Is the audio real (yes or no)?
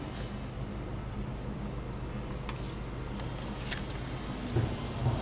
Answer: yes